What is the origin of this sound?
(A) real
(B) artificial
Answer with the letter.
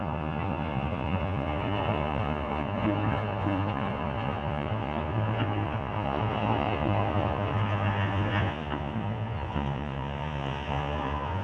B